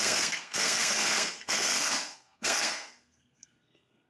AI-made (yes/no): yes